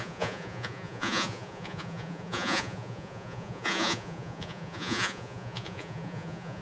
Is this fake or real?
fake